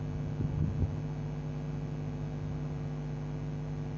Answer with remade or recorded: recorded